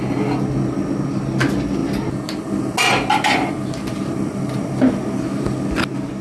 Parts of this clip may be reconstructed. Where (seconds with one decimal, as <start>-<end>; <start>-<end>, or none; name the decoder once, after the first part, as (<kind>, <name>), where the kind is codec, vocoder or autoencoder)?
none

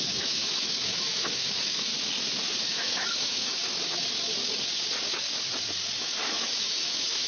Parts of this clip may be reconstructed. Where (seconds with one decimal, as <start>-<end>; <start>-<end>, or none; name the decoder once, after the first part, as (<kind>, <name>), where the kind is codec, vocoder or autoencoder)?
0.0-1.9 (autoencoder, DAC-VAE); 2.6-3.6; 6.0-7.3